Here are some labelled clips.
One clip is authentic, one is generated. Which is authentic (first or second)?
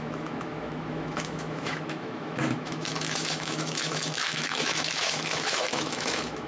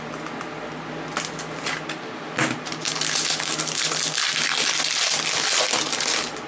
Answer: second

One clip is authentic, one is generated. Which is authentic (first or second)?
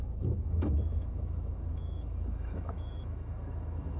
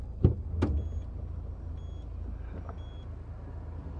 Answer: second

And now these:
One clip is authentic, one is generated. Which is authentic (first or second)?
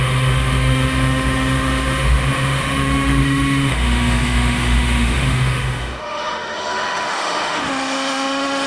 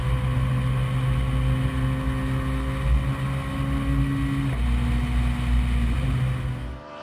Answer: second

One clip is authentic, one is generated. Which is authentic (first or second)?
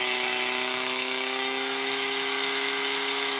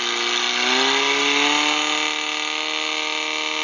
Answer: second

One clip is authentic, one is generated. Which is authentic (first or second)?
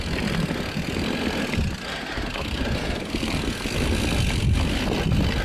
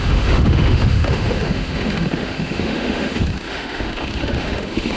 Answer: first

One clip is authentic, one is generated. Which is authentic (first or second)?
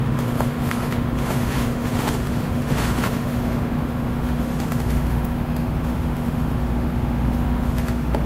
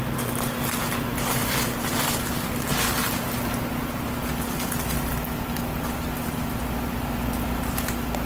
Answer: second